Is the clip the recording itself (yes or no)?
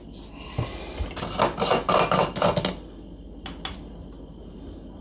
yes